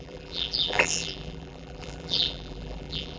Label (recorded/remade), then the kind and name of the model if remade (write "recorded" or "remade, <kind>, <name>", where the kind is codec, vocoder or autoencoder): remade, vocoder, BigVGAN v2